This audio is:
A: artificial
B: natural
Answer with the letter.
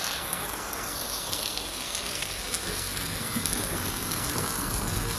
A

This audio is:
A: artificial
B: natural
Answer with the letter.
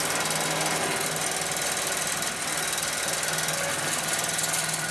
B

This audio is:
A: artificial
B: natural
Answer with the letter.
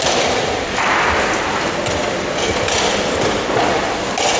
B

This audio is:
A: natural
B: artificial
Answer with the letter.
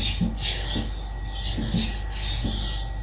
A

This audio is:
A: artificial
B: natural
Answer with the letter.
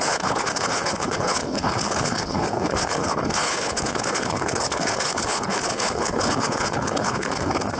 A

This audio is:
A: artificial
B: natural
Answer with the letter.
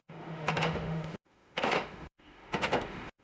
A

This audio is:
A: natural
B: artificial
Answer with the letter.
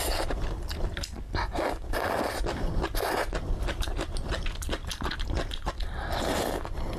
A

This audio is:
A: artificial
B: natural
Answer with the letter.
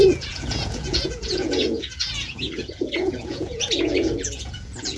A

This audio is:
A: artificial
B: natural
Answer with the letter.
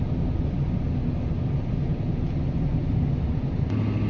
B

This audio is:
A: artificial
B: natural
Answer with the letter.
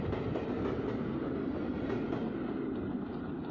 B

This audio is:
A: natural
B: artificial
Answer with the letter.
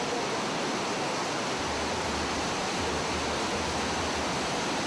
A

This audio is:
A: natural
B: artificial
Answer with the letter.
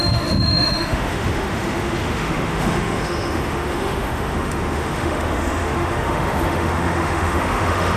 B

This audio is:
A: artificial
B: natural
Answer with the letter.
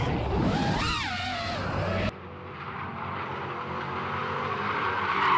B